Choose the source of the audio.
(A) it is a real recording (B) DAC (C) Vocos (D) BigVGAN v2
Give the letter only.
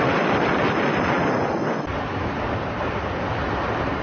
A